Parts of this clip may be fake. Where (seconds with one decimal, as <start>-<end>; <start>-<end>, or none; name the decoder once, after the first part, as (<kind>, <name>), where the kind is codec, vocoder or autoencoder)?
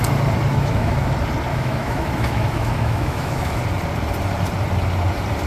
0.5-1.1 (autoencoder, DAC-VAE); 1.5-3.6